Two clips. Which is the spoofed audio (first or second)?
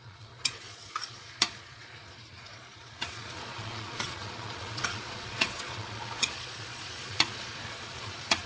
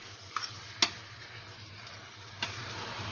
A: first